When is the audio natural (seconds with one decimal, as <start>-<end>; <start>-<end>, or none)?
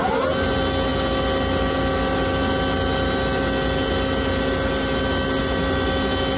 0.0-6.4